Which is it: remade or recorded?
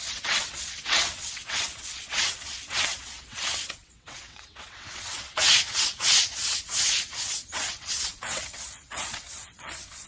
remade